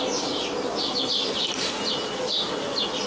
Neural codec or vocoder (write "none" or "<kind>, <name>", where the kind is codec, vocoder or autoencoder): none